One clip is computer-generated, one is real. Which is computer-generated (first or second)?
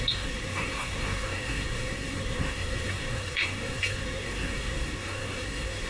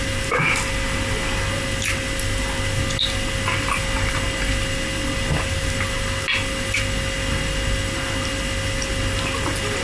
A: first